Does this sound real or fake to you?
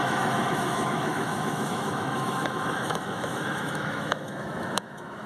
fake